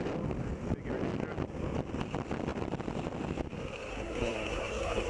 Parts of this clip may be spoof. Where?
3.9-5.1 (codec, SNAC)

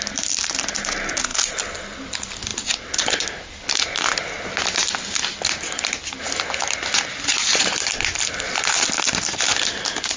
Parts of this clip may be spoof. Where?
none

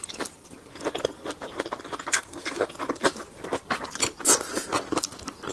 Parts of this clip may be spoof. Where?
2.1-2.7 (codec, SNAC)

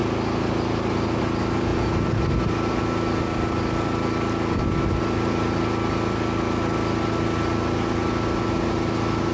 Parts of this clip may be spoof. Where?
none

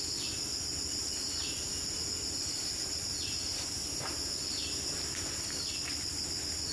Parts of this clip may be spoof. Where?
none

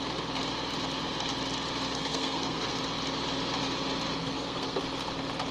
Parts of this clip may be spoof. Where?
2.0-2.8 (codec, SNAC); 4.2-4.8